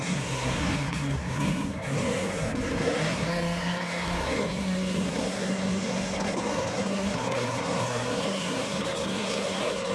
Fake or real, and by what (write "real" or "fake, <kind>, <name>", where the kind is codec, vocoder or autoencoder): fake, codec, SNAC